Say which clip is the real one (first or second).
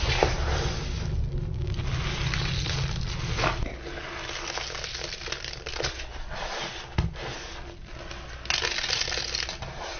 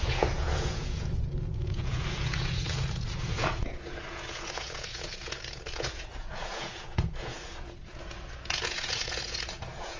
first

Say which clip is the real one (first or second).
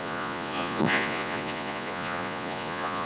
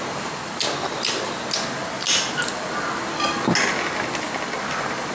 second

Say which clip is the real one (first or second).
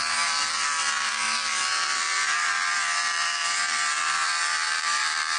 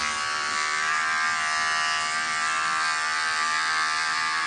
second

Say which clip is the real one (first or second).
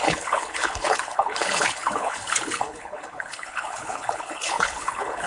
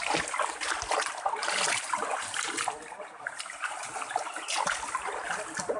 second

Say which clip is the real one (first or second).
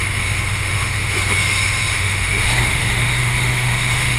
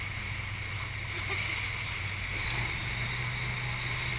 second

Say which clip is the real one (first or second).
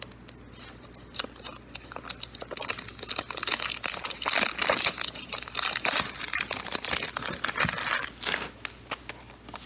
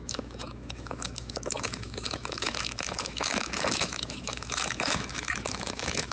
first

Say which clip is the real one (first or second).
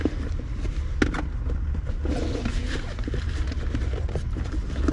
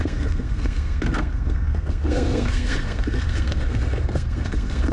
first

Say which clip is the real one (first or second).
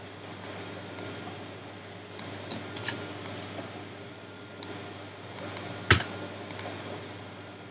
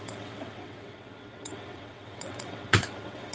first